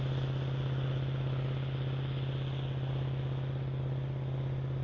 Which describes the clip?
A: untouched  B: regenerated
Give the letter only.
A